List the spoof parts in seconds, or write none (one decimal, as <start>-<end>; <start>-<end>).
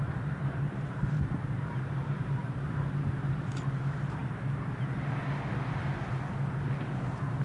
0.0-4.2; 6.8-7.4